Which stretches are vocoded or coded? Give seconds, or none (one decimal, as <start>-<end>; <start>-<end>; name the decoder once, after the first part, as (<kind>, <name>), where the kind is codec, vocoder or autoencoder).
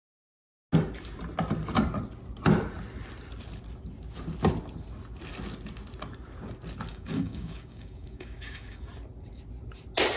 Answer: 6.9-8.9 (codec, DAC)